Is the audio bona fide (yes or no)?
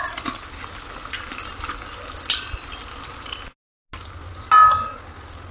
yes